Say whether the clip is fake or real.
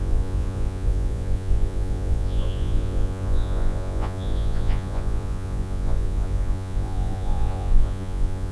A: fake